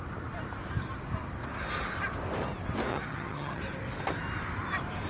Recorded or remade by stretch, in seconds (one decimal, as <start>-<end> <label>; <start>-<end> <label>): 0.0-2.9 recorded; 2.9-3.6 remade; 3.6-5.1 recorded